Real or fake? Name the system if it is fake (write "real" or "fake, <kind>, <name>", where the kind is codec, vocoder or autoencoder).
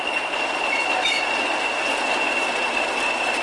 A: real